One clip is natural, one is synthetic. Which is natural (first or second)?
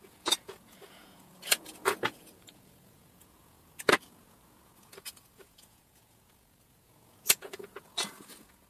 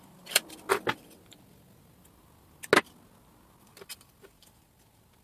second